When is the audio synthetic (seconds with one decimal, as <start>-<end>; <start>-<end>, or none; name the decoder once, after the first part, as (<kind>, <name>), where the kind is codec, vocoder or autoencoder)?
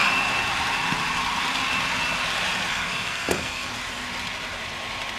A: 2.7-3.7 (codec, SNAC)